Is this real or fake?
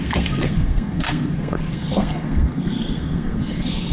fake